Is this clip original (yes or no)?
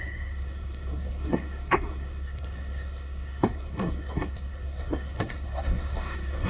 no